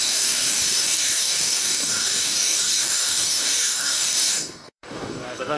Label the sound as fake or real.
fake